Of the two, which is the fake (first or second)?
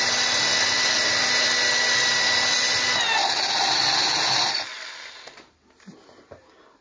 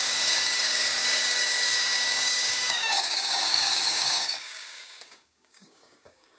second